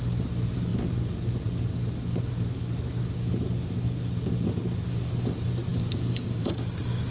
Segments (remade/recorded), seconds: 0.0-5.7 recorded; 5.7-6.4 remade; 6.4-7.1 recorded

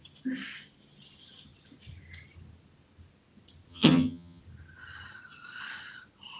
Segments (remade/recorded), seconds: 0.0-3.7 recorded; 3.7-4.4 remade; 4.4-6.4 recorded

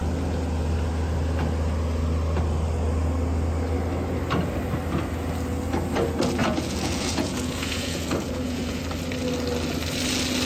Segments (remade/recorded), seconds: 0.0-6.4 recorded; 6.4-8.8 remade; 8.8-10.5 recorded

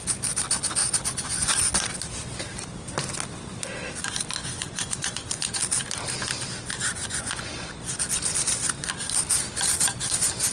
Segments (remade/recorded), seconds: 0.0-0.8 recorded; 0.8-1.9 remade; 1.9-4.4 recorded; 4.4-5.5 remade; 5.5-7.0 recorded; 7.0-7.7 remade; 7.7-10.5 recorded

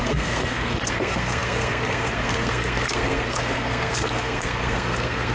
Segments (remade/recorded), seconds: 0.0-5.3 remade